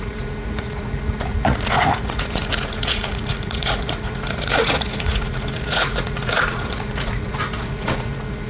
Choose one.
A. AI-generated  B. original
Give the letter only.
A